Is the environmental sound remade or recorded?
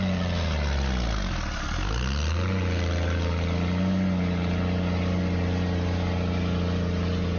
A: recorded